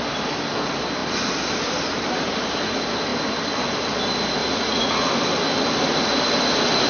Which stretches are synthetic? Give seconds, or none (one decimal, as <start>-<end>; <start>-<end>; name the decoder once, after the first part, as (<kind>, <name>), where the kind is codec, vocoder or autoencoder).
4.4-5.1 (vocoder, Vocos)